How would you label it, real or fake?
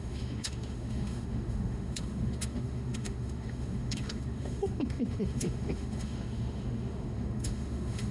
fake